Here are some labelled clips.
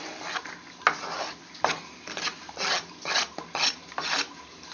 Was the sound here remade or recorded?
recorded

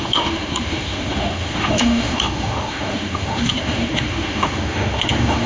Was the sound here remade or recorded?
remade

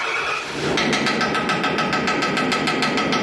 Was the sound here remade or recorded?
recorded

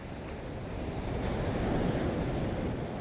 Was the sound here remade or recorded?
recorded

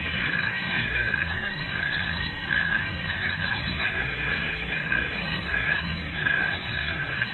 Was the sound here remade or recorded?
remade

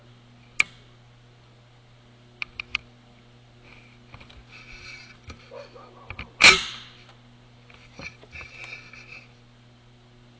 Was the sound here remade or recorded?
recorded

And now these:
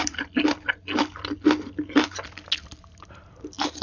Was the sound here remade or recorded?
recorded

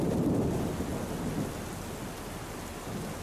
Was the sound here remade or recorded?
recorded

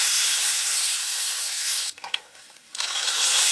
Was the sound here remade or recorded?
remade